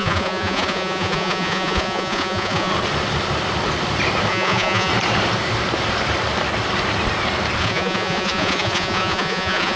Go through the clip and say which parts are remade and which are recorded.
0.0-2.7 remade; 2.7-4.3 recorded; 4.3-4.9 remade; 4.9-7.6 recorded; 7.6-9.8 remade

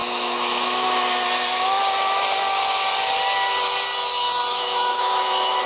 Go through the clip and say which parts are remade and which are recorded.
0.0-0.9 remade; 0.9-4.5 recorded; 4.5-5.7 remade